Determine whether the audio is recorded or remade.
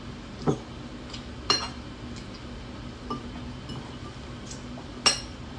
recorded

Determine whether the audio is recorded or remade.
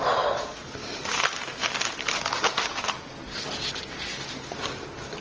recorded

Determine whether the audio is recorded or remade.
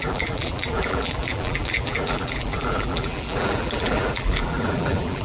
remade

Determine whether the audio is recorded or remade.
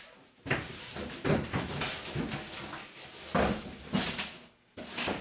recorded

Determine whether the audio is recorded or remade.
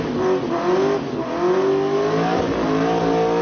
recorded